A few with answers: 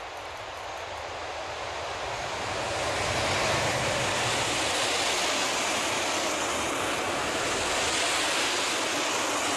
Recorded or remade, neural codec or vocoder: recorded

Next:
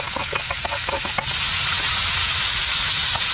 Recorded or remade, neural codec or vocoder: recorded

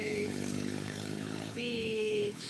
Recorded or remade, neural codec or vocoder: remade, codec, HILCodec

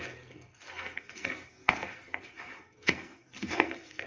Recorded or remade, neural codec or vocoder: remade, codec, SNAC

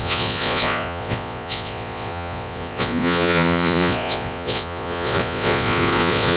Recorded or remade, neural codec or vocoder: remade, vocoder, Vocos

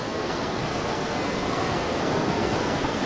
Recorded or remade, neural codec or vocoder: remade, codec, SNAC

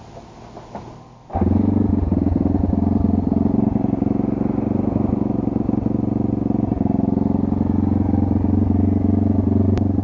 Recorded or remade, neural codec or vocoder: recorded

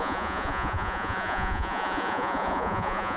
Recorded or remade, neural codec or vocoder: remade, vocoder, Vocos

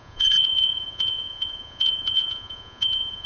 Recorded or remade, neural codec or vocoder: remade, vocoder, Vocos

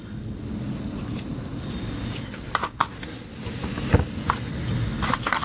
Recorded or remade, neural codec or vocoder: recorded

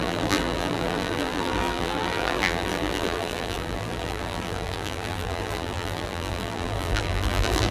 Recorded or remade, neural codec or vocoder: remade, vocoder, BigVGAN v2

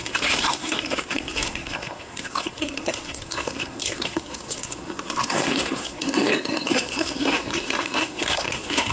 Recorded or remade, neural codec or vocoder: remade, codec, SNAC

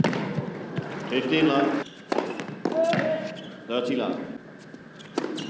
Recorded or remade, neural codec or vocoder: recorded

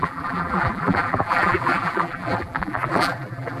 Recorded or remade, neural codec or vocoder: remade, vocoder, BigVGAN v2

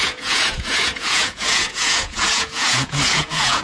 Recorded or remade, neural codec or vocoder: remade, vocoder, Vocos